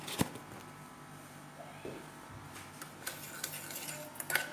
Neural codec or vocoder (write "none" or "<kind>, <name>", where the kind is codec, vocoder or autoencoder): none